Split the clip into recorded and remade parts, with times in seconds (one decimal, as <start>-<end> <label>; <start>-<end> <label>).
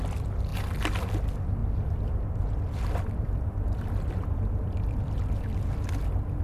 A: 0.0-1.6 recorded; 1.6-5.0 remade; 5.0-6.4 recorded